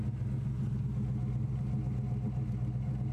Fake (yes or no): no